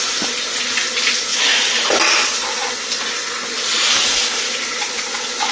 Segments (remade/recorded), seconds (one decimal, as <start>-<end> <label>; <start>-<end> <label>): 0.0-1.3 recorded; 1.3-2.7 remade; 2.7-5.5 recorded